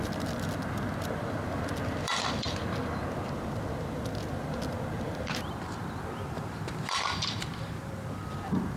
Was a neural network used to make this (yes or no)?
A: yes